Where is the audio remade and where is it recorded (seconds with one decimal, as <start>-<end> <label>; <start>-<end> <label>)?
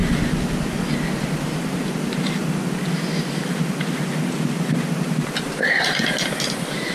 0.0-6.9 recorded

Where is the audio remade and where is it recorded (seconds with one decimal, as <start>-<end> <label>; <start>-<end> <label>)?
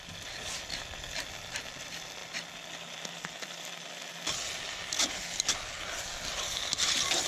0.0-7.3 recorded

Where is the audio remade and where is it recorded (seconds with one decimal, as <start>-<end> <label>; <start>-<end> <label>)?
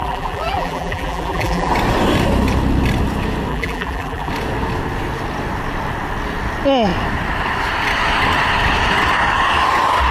0.0-1.7 remade; 1.7-3.5 recorded; 3.5-4.3 remade; 4.3-10.1 recorded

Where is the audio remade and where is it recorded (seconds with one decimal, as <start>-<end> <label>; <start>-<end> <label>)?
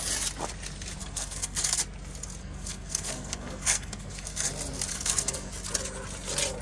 0.0-1.0 recorded; 1.0-1.8 remade; 1.8-2.4 recorded; 2.4-4.5 remade; 4.5-4.9 recorded; 4.9-5.5 remade; 5.5-6.6 recorded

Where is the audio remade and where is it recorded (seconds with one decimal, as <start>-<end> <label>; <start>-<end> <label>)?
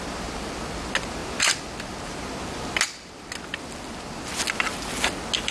0.0-5.5 recorded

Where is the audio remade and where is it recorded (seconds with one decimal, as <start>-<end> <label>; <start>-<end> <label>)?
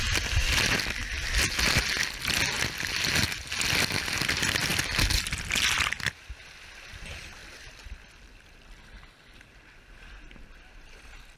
0.0-11.4 recorded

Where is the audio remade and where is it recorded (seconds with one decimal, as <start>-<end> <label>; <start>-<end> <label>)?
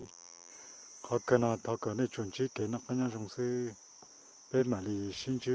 0.0-0.5 remade; 0.5-5.5 recorded